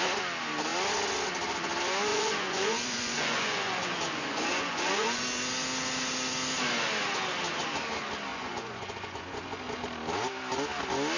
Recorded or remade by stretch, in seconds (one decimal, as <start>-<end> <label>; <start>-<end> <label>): 0.0-2.1 recorded; 2.1-5.2 remade; 5.2-8.3 recorded; 8.3-9.8 remade; 9.8-11.2 recorded